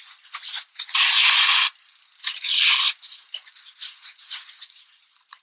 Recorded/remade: recorded